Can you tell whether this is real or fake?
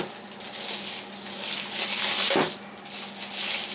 real